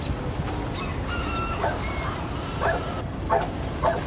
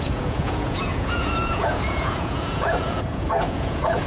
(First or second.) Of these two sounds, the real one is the first